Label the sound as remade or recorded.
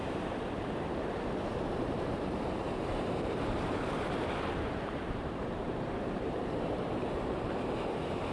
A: remade